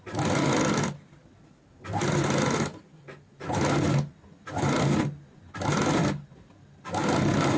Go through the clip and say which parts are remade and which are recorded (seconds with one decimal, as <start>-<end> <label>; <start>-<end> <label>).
0.0-7.6 recorded